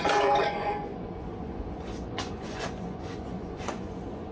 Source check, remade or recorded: remade